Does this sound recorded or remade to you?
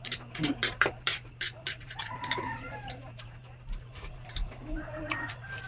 remade